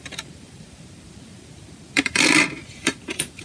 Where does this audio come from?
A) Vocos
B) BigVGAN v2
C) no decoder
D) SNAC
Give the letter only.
B